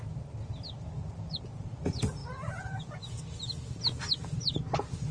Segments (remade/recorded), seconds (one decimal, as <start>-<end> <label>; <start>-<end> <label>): 0.0-5.1 recorded